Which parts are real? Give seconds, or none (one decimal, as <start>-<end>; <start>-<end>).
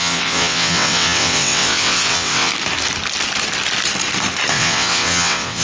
2.5-4.5